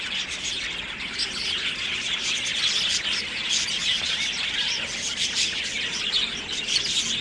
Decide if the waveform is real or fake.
real